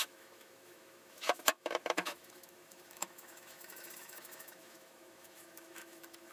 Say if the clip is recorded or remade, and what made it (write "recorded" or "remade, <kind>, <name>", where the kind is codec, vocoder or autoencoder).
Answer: remade, autoencoder, DAC-VAE